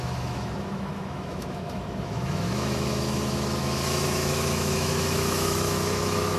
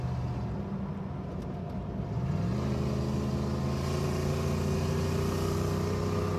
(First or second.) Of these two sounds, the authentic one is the second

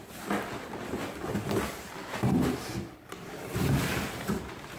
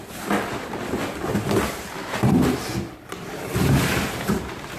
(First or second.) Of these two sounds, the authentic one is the second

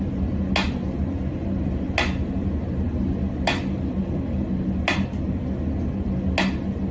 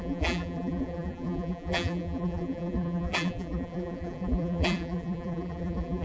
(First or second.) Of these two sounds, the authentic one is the first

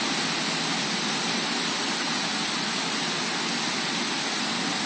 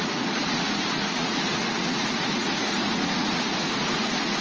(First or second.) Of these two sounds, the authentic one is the first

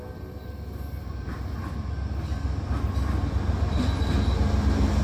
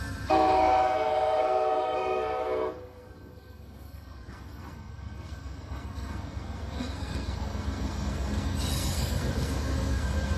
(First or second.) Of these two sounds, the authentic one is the first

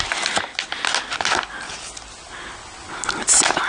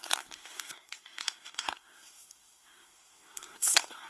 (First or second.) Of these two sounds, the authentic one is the first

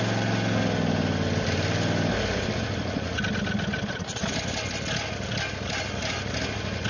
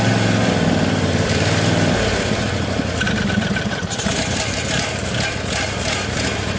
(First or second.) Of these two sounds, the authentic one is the first